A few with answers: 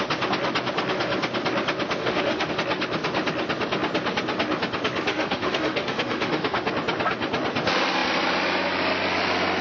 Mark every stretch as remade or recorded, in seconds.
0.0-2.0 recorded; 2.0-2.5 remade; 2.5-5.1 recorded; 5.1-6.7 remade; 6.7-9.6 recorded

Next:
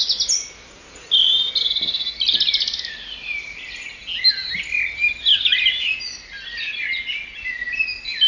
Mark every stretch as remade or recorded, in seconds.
0.0-8.3 recorded

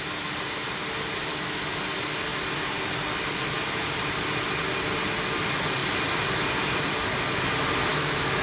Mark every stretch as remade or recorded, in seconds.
0.0-1.3 recorded; 1.3-1.8 remade; 1.8-7.9 recorded; 7.9-8.4 remade

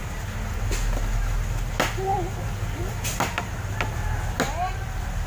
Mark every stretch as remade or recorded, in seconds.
0.0-5.3 recorded

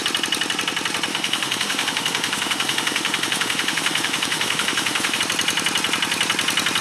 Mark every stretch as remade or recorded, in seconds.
0.0-1.1 recorded; 1.1-5.2 remade; 5.2-6.8 recorded

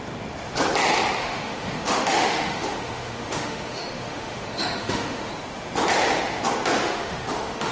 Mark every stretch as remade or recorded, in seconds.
0.0-1.2 recorded; 1.2-5.3 remade; 5.3-6.8 recorded; 6.8-7.7 remade